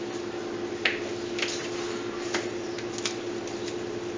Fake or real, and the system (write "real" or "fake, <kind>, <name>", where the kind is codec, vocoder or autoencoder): real